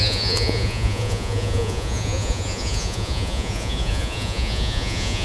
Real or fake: fake